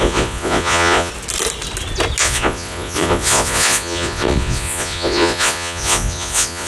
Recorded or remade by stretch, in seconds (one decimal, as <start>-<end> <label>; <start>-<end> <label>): 0.0-1.1 remade; 1.1-2.2 recorded; 2.2-6.7 remade